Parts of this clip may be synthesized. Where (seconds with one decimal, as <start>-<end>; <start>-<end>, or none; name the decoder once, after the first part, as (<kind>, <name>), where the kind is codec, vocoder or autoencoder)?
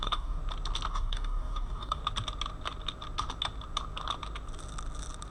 0.0-0.4 (codec, DAC); 0.9-2.0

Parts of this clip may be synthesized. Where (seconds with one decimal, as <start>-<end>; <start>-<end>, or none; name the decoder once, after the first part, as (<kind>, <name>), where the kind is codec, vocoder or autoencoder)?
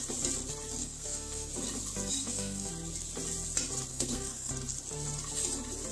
0.8-1.5 (codec, SNAC); 2.2-2.7; 3.9-4.5